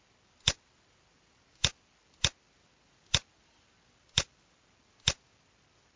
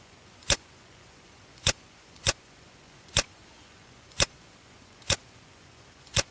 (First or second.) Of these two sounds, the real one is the first